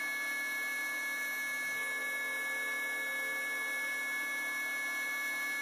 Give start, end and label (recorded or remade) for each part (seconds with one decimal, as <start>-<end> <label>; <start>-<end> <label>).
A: 0.0-5.6 recorded